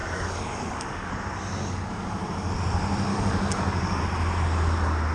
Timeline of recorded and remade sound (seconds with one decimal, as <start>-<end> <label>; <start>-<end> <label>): 0.0-1.1 remade; 1.1-1.6 recorded; 1.6-2.5 remade; 2.5-3.1 recorded; 3.1-4.0 remade; 4.0-5.1 recorded